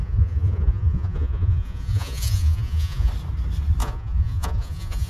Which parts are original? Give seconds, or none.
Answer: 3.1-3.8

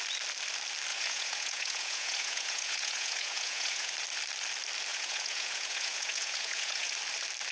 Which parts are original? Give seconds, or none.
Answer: 0.0-0.9; 3.9-4.9; 6.9-7.5

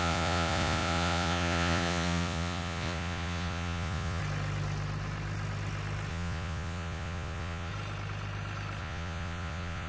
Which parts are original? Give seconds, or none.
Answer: 4.2-6.1; 7.7-8.8